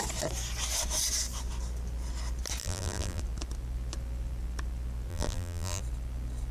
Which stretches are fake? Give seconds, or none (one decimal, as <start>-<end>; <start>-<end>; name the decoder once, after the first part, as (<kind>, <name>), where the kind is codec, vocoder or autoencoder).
2.6-3.2 (vocoder, BigVGAN v2); 5.1-5.8